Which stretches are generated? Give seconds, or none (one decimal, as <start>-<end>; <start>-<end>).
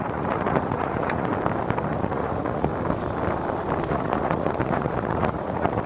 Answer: 0.0-1.3; 1.9-2.7; 3.9-5.9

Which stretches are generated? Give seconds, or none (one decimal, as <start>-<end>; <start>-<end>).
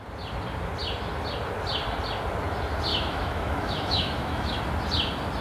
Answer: 2.9-4.6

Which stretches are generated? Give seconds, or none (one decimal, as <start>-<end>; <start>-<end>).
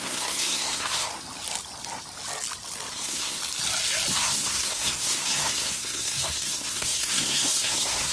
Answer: 0.0-1.1; 2.9-3.4; 4.1-8.1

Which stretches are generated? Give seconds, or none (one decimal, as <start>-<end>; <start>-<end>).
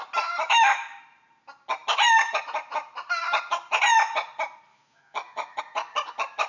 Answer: 0.4-1.0; 4.7-5.6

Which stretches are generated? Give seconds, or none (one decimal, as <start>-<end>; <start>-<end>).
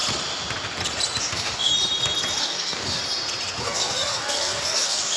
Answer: 1.2-1.7; 2.4-3.0; 3.6-5.2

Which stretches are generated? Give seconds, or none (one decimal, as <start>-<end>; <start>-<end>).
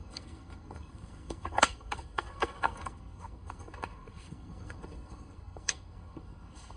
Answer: 0.0-6.8